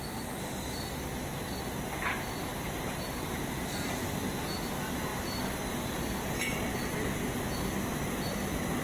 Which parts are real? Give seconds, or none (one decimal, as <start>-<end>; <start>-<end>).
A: 0.0-2.5; 3.5-8.8